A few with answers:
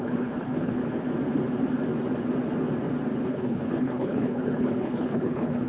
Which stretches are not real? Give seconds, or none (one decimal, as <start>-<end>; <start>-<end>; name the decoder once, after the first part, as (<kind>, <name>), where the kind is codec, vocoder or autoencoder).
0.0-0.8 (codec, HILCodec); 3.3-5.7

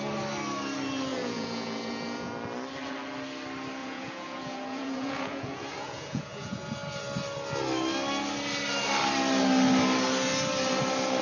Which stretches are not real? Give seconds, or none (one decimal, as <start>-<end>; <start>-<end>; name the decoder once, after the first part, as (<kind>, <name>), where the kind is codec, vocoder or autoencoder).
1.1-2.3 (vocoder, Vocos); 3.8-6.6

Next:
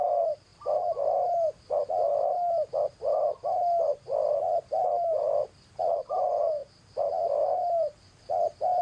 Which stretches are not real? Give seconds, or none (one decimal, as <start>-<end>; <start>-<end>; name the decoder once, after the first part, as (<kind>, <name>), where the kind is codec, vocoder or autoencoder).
none

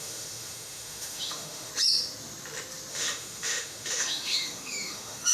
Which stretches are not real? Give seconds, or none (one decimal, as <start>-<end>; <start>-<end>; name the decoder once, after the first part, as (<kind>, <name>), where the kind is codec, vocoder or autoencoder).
0.0-1.7 (autoencoder, DAC-VAE); 2.9-5.3